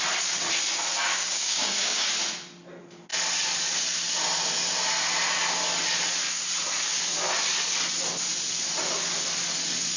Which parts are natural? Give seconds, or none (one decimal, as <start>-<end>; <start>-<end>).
0.0-1.1; 2.1-10.0